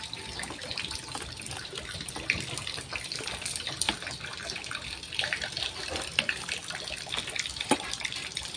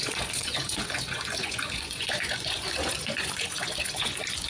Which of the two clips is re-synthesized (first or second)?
second